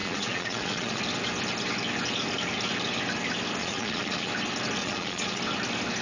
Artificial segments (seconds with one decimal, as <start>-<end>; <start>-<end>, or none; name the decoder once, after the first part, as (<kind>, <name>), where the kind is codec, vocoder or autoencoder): 0.0-1.0 (vocoder, Vocos); 3.6-4.3; 4.8-5.4